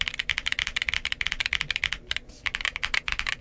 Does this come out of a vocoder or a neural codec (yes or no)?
no